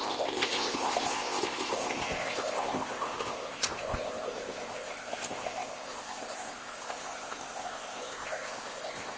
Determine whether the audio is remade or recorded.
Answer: remade